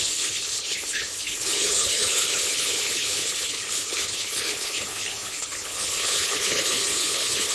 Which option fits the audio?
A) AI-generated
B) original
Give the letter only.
A